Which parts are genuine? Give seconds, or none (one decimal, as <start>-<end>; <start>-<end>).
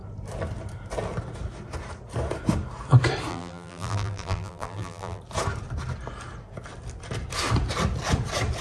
0.0-3.3; 5.2-8.6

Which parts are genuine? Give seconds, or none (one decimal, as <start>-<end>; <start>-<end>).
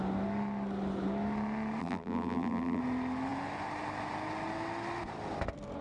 0.0-1.8; 2.8-5.8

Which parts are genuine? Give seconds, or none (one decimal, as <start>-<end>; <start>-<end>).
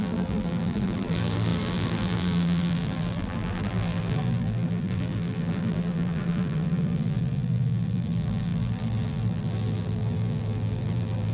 none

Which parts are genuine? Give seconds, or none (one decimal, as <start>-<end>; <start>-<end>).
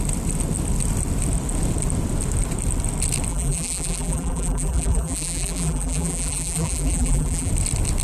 0.0-3.3; 7.5-8.0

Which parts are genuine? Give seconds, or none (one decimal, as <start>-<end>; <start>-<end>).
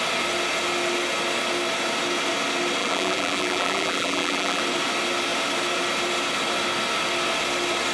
0.0-2.8; 4.6-7.9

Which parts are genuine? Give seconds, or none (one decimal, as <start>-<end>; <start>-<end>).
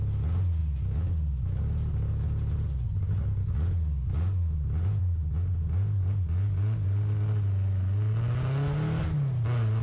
0.0-9.8